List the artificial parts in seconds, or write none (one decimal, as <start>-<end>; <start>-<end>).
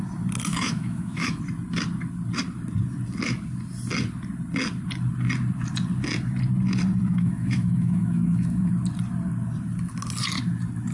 0.5-1.4; 7.1-8.7